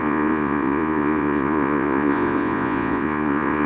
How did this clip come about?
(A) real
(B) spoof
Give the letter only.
B